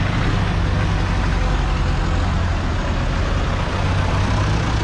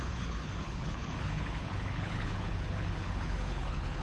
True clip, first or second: first